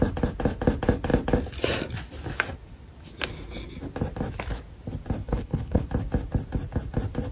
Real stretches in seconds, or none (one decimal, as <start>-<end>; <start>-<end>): 0.0-5.2; 5.8-7.3